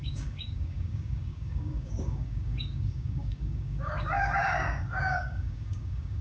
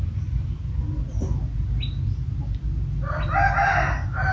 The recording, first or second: second